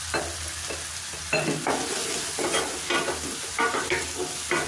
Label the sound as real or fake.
real